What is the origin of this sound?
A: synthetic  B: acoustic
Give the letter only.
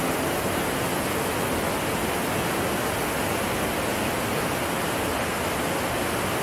B